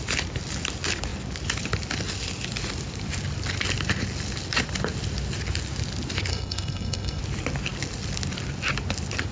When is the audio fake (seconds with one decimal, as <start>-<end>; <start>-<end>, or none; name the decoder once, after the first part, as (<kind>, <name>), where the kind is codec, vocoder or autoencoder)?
6.3-7.2 (codec, SNAC)